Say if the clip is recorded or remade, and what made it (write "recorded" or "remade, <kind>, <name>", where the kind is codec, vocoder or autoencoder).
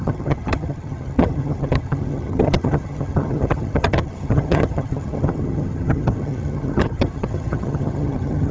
remade, vocoder, HiFi-GAN